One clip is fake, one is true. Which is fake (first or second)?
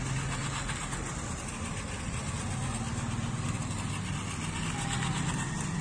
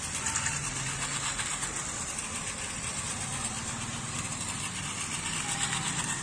second